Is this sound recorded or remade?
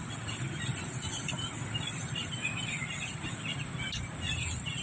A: recorded